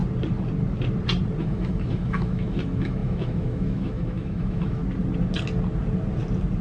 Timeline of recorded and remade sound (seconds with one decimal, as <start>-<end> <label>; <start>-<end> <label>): 0.0-1.4 recorded; 1.4-4.8 remade; 4.8-6.6 recorded